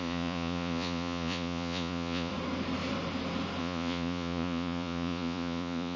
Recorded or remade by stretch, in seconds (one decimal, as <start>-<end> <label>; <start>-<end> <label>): 0.0-2.3 remade; 2.3-3.6 recorded; 3.6-6.0 remade